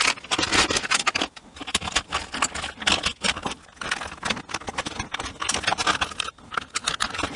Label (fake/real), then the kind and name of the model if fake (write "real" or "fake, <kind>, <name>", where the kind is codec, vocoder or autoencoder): real